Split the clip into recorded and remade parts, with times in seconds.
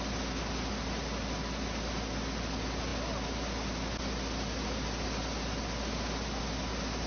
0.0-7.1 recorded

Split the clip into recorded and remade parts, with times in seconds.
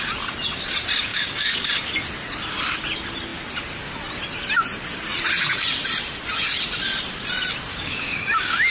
0.0-1.1 recorded; 1.1-1.7 remade; 1.7-7.7 recorded; 7.7-8.7 remade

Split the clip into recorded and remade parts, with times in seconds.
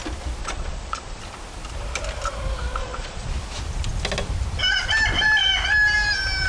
0.0-0.4 recorded; 0.4-1.2 remade; 1.2-2.8 recorded; 2.8-3.3 remade; 3.3-6.5 recorded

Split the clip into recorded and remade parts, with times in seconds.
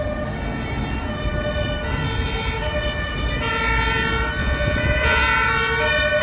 0.0-4.4 recorded; 4.4-5.2 remade; 5.2-6.2 recorded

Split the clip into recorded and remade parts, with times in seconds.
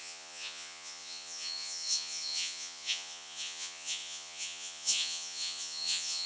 0.0-6.3 remade